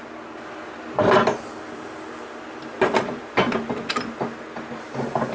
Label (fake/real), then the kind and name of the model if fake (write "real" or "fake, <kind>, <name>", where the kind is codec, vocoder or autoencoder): real